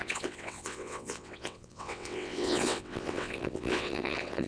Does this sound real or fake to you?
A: fake